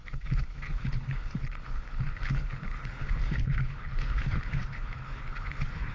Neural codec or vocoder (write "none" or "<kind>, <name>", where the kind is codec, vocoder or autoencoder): codec, HILCodec